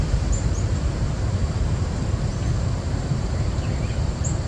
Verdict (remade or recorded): remade